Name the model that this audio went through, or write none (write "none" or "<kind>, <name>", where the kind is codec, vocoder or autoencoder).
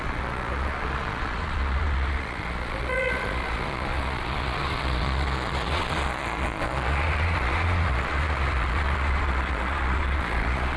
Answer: vocoder, Vocos